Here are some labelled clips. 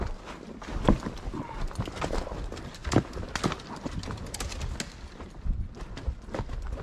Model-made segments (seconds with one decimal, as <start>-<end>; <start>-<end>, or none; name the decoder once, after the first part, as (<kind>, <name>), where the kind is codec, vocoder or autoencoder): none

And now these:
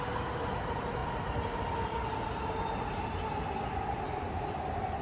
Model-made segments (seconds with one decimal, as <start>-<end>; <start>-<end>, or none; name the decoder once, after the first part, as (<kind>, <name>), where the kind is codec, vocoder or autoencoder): none

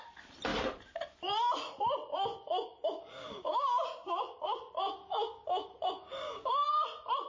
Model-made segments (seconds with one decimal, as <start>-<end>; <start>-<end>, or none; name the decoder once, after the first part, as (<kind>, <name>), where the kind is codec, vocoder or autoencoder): 2.3-6.5 (codec, DAC)

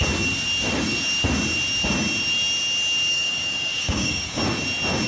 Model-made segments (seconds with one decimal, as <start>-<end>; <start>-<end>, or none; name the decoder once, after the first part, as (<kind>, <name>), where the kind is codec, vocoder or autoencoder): 3.1-4.4 (codec, DAC)

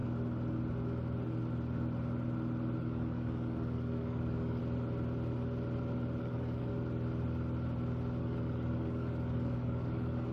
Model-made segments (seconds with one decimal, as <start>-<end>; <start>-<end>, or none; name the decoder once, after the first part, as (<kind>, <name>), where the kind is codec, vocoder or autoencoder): 2.8-4.6 (codec, DAC); 6.2-6.7; 8.2-10.3

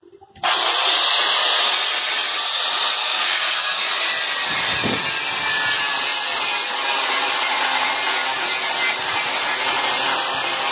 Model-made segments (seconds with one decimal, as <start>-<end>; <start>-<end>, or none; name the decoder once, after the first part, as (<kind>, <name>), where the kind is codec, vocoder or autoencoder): 3.0-3.8 (codec, DAC)

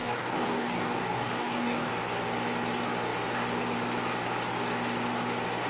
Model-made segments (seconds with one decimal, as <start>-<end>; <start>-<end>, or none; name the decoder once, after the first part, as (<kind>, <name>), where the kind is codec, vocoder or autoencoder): 0.0-1.9 (codec, DAC)

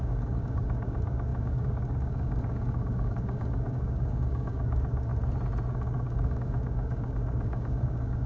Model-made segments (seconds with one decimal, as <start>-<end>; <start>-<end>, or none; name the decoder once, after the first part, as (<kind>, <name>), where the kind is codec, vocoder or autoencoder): 0.0-5.1 (codec, DAC); 5.7-8.3